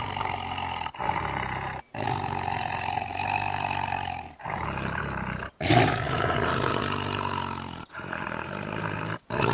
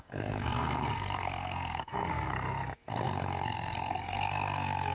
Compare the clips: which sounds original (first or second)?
first